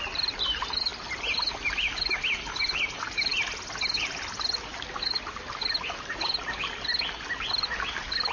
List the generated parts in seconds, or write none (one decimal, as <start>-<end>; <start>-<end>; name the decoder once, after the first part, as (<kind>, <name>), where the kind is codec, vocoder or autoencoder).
none